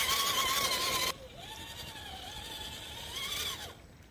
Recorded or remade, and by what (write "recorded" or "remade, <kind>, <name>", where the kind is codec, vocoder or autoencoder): recorded